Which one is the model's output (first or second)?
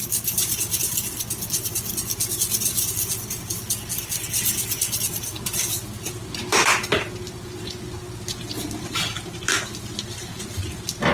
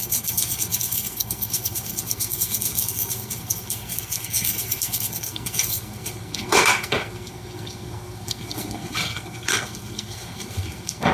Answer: second